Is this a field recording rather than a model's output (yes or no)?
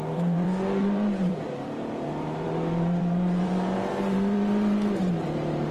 no